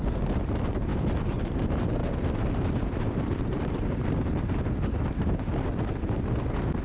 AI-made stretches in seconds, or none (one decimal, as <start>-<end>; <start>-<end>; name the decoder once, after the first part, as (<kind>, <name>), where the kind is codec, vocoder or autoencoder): 2.0-6.1 (vocoder, BigVGAN v2)